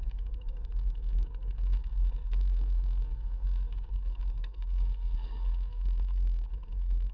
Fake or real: fake